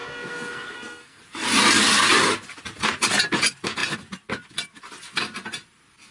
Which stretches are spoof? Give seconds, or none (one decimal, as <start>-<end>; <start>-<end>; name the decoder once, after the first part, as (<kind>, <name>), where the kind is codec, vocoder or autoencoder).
0.0-1.2 (codec, SNAC)